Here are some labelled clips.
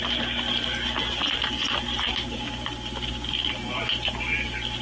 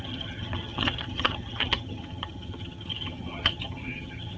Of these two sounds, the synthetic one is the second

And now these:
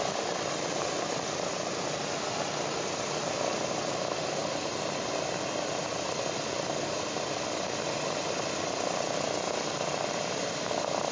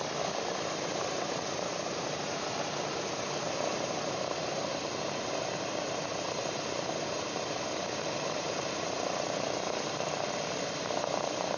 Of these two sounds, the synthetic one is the second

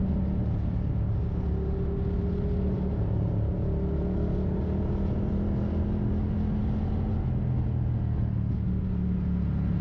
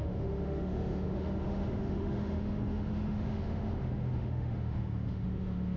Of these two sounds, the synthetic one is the second